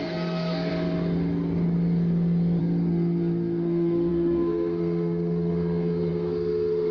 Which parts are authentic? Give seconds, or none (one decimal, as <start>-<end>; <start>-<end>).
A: 0.7-2.6

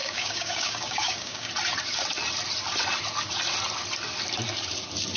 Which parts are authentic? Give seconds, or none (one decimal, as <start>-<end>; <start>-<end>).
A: 1.5-5.2

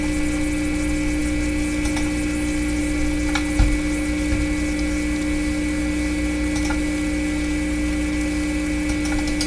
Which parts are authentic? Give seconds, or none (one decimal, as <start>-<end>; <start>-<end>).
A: 0.0-9.5

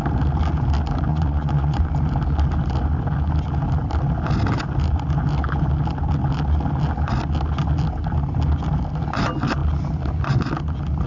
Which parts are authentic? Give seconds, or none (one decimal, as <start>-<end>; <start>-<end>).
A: 0.0-1.1; 1.9-11.1

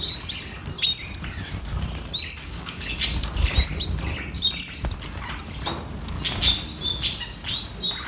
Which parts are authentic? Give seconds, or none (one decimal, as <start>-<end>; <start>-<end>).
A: 0.0-2.4; 2.9-8.1

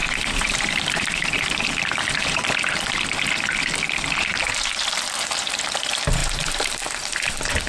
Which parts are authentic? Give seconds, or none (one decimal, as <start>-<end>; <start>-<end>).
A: 1.8-6.2; 7.3-7.7

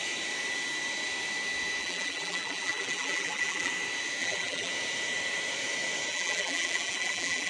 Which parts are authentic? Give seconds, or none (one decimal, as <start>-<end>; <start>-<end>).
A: 0.0-1.8; 3.7-4.2; 4.7-6.1

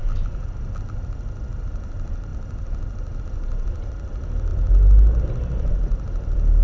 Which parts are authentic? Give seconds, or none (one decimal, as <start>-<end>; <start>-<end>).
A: 0.0-1.6; 2.3-3.2